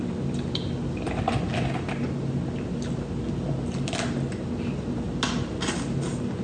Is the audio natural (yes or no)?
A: yes